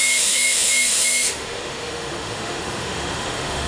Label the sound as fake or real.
fake